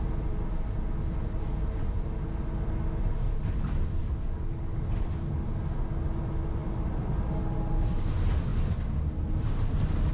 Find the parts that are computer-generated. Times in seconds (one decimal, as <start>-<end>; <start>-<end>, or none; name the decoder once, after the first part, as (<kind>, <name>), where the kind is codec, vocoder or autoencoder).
4.0-4.8 (codec, DAC)